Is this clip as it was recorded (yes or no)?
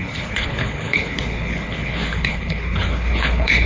no